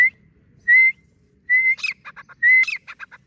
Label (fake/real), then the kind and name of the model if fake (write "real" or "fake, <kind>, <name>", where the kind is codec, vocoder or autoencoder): real